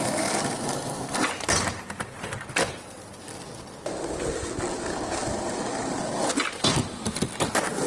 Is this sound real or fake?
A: real